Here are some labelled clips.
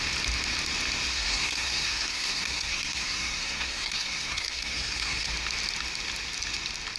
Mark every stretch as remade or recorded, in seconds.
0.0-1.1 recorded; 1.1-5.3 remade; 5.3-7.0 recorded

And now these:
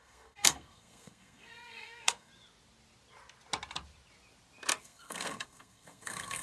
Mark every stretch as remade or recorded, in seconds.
0.0-2.3 remade; 2.3-4.8 recorded; 4.8-6.4 remade

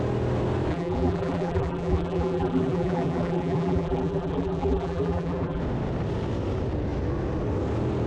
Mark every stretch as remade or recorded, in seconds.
0.0-0.7 recorded; 0.7-5.6 remade; 5.6-8.1 recorded

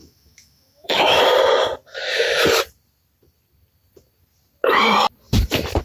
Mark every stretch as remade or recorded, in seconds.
0.0-1.2 remade; 1.2-5.8 recorded

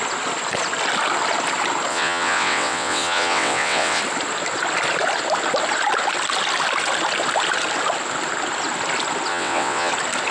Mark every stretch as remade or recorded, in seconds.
0.0-1.9 recorded; 1.9-4.0 remade; 4.0-9.3 recorded; 9.3-9.9 remade; 9.9-10.3 recorded

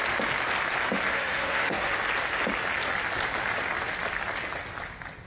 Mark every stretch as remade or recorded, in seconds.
0.0-1.1 recorded; 1.1-1.9 remade; 1.9-5.3 recorded